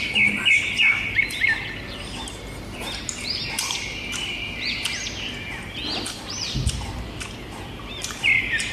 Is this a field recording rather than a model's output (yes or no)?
yes